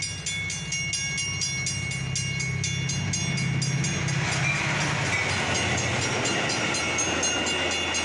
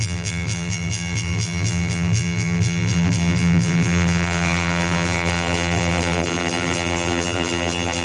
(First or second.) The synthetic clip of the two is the second